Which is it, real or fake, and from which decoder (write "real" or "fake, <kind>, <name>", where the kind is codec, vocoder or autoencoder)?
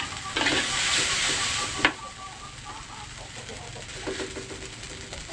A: real